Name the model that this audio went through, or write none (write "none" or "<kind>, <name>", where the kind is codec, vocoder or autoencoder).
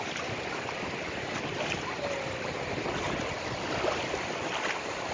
none